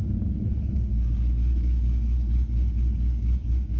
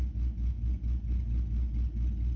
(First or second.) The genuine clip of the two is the second